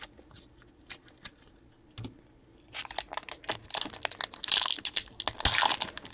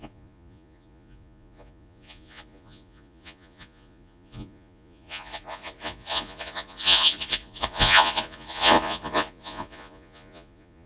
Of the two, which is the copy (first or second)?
second